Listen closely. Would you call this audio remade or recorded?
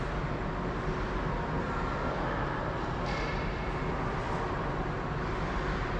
recorded